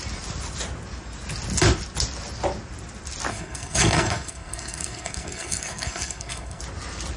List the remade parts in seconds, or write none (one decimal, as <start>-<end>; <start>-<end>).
3.3-6.6